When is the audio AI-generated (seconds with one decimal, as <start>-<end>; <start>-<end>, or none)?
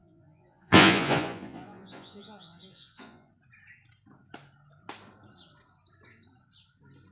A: 0.0-3.3